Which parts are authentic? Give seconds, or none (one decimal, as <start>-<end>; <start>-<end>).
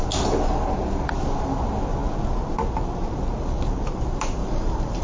0.0-4.4